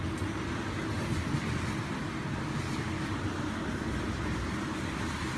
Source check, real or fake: real